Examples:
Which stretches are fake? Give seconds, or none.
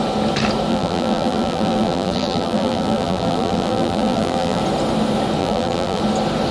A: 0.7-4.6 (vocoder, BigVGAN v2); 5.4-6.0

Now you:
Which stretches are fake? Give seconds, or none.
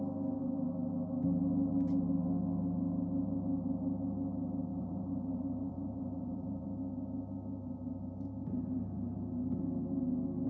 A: 4.7-6.8 (vocoder, BigVGAN v2); 7.6-9.8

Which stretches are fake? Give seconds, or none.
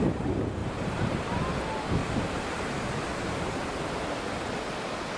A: 0.6-1.6 (vocoder, BigVGAN v2)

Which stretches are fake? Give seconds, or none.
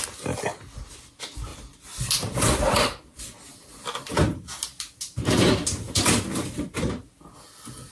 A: 1.5-3.1 (vocoder, BigVGAN v2)